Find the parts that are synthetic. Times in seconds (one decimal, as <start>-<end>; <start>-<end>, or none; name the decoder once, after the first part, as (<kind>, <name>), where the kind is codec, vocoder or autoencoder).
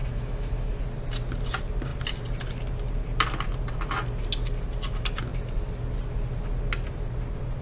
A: 0.0-0.8 (autoencoder, DAC-VAE)